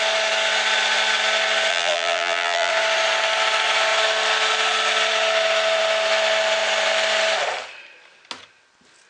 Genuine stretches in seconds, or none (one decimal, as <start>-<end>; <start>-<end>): 0.0-1.7; 2.7-9.1